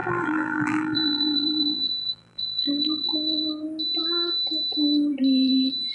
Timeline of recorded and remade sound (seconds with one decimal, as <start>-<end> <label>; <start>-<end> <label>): 0.0-3.5 remade; 3.5-5.9 recorded